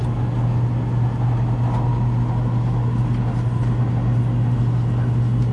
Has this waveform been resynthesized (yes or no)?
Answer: no